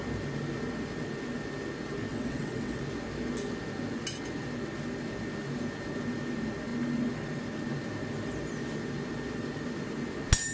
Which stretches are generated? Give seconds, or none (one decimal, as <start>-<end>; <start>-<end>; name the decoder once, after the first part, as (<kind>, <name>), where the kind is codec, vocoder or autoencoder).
2.1-2.8 (vocoder, WaveNeXt)